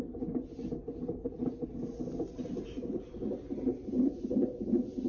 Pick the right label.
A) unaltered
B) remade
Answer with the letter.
A